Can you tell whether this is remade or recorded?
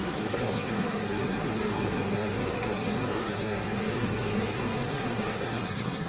remade